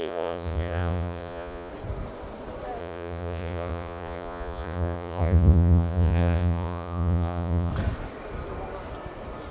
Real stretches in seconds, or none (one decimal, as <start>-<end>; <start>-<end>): 1.7-2.8; 7.7-9.5